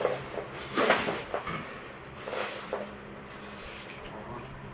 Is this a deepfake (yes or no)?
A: yes